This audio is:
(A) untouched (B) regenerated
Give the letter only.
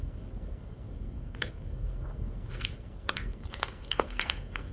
B